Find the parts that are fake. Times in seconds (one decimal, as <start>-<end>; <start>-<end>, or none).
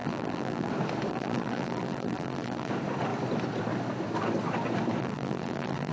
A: 0.0-0.7; 1.1-2.7; 5.0-5.9